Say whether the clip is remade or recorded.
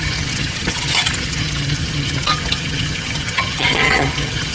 remade